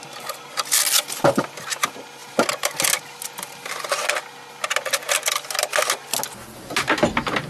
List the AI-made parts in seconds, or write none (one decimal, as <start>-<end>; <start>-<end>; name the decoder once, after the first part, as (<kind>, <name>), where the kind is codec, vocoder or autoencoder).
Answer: none